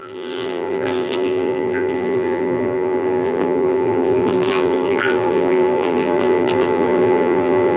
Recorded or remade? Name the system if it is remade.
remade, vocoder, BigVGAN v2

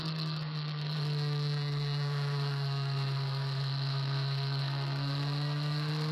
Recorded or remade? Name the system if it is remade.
remade, codec, SNAC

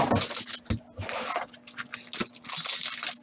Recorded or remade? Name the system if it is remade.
recorded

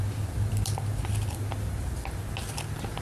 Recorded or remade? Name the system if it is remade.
recorded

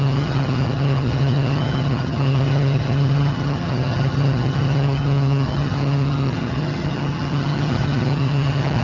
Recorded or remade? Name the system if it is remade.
remade, vocoder, HiFi-GAN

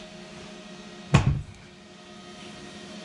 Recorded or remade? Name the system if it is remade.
recorded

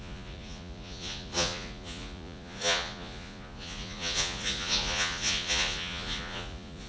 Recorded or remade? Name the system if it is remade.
remade, vocoder, Vocos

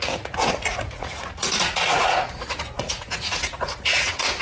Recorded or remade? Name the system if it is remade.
remade, vocoder, Vocos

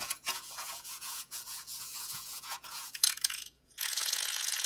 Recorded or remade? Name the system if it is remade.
remade, vocoder, Vocos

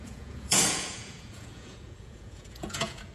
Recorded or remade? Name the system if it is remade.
remade, vocoder, Vocos